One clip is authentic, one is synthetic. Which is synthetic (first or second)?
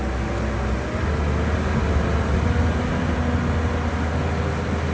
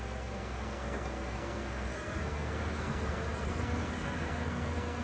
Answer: second